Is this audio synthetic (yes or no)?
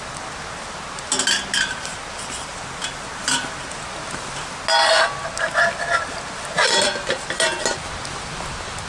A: no